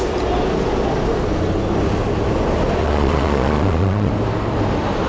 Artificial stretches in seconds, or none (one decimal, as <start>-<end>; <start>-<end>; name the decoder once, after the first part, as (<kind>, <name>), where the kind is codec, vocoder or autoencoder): 2.8-4.1 (vocoder, Vocos)